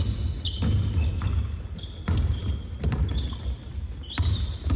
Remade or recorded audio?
recorded